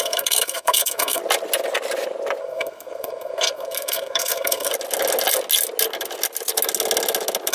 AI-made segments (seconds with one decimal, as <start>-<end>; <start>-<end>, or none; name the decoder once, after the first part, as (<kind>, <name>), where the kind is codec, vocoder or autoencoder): 0.0-1.2 (codec, SNAC); 2.4-4.7